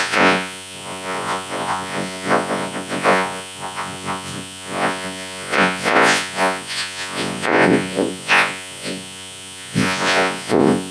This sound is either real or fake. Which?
fake